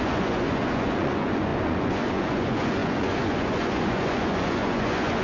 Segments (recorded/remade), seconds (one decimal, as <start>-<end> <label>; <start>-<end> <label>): 0.0-5.2 remade